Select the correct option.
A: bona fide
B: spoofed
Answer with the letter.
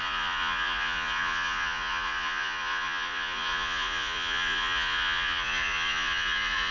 B